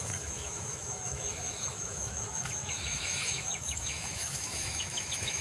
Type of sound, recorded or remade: remade